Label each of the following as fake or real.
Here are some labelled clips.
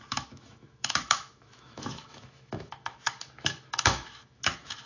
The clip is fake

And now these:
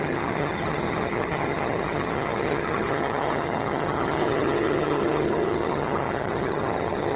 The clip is fake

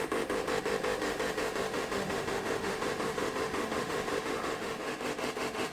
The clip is fake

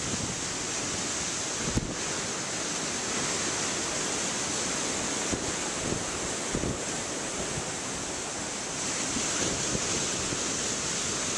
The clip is real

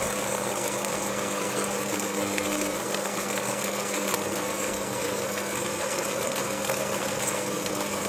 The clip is fake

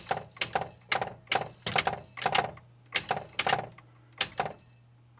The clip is real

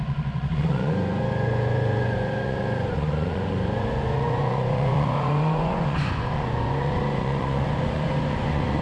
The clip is fake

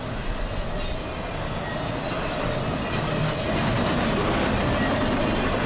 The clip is real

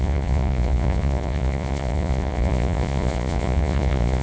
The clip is fake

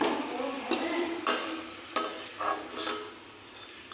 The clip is fake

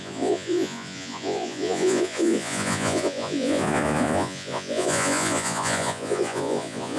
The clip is fake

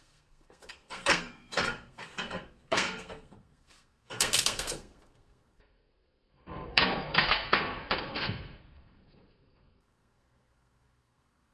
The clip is fake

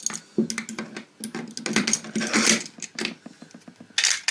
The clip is real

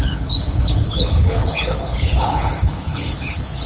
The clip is fake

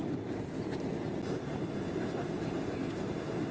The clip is real